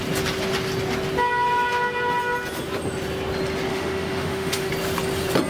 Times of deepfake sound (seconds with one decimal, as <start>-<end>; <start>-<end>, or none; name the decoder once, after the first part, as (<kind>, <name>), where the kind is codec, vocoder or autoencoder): 3.7-4.7 (autoencoder, DAC-VAE)